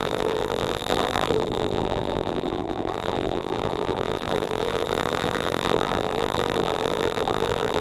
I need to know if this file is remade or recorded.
remade